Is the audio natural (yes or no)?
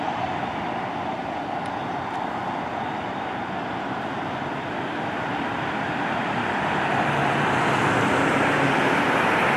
no